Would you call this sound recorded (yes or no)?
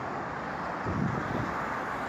no